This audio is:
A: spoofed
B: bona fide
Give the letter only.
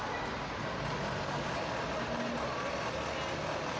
B